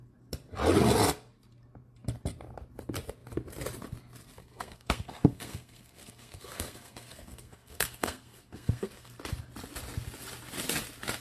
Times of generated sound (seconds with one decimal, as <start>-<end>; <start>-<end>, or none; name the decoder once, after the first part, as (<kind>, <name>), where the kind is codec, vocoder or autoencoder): 4.4-9.1 (codec, SNAC)